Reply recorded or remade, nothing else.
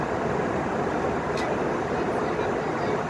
recorded